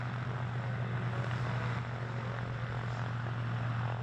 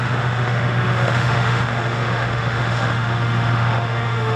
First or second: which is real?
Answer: first